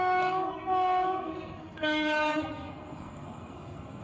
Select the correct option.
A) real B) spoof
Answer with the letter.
B